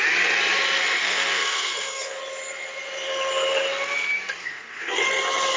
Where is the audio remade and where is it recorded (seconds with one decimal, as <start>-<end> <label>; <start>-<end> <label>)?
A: 0.0-1.0 recorded; 1.0-2.2 remade; 2.2-4.4 recorded; 4.4-5.1 remade; 5.1-5.6 recorded